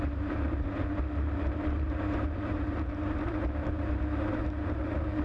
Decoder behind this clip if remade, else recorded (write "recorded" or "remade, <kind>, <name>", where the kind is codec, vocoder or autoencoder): remade, vocoder, BigVGAN v2